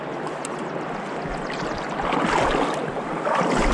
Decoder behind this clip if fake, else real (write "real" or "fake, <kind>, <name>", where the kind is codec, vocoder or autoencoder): real